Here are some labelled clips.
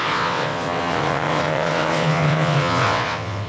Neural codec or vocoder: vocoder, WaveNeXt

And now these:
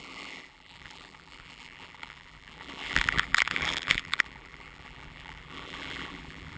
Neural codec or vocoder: vocoder, BigVGAN v2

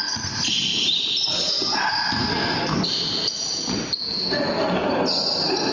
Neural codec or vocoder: none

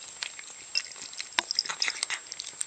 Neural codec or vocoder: none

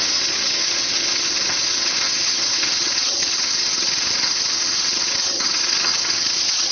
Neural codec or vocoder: vocoder, HiFi-GAN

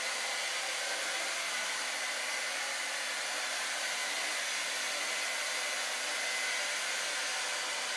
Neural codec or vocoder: none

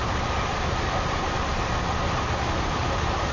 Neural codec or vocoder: vocoder, BigVGAN v2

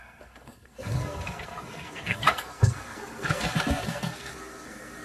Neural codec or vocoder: codec, SNAC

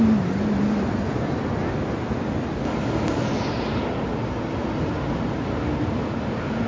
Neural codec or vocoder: none